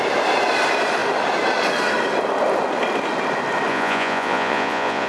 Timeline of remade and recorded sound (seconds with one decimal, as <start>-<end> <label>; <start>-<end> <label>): 0.0-3.7 recorded; 3.7-5.1 remade